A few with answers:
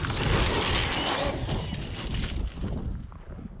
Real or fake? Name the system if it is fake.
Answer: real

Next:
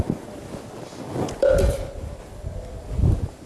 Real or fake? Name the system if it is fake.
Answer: real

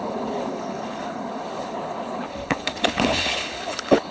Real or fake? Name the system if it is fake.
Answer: fake, codec, HILCodec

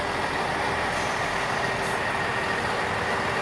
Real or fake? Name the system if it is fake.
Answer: real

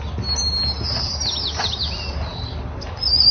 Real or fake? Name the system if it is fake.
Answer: real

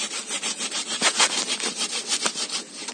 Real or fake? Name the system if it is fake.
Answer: real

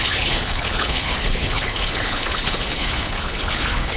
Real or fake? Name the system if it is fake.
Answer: fake, codec, HILCodec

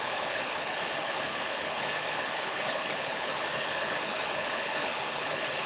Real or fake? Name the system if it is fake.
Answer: fake, codec, HILCodec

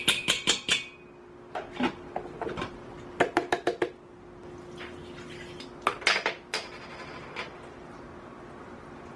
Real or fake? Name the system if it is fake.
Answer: real